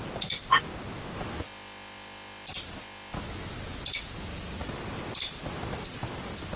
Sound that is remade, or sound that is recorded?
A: recorded